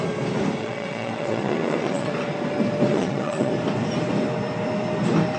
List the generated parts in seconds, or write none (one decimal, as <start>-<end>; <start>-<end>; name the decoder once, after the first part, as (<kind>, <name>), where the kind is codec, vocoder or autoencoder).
0.6-2.1 (vocoder, Vocos); 2.9-3.5

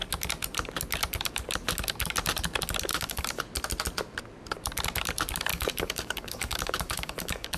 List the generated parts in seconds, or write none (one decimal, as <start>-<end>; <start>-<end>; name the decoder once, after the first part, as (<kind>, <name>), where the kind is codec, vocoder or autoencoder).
2.9-3.4 (codec, DAC); 5.5-7.6

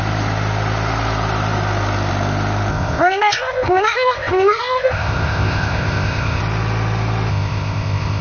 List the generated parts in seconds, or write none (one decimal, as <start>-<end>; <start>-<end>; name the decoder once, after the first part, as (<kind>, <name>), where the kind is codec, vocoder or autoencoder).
2.7-6.4 (codec, ZipCodec); 7.3-8.2

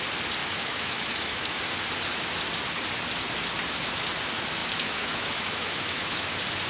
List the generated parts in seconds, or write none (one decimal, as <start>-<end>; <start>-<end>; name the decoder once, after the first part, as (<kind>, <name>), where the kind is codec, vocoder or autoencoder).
0.4-1.6 (autoencoder, DAC-VAE); 4.6-6.3

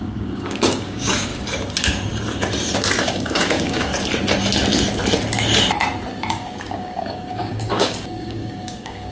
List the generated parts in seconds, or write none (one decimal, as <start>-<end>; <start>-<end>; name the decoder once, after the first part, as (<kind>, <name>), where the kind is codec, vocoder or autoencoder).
0.0-1.3 (codec, DAC); 3.0-3.9; 6.3-9.1

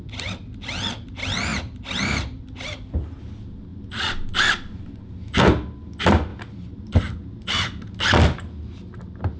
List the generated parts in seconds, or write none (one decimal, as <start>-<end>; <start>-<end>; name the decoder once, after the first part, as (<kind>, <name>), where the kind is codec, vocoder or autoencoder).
none

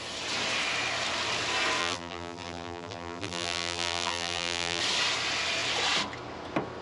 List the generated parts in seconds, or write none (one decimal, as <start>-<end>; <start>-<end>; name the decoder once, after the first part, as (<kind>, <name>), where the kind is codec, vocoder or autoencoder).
1.8-4.8 (vocoder, BigVGAN v2)

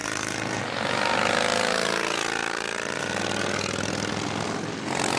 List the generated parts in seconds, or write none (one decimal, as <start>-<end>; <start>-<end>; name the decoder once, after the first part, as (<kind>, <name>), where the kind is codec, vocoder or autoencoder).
0.0-0.6 (vocoder, BigVGAN v2)